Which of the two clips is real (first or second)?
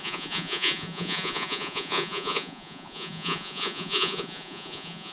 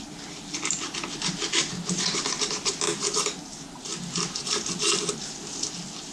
second